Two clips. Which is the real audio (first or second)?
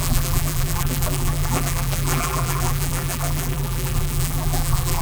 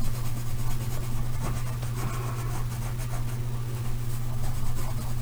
second